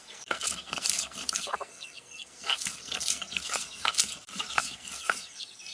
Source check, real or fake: fake